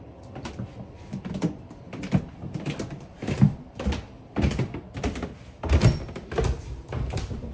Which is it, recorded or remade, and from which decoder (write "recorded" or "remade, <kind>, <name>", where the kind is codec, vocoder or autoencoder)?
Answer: recorded